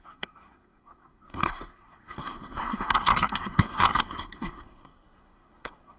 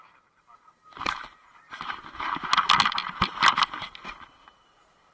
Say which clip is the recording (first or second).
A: second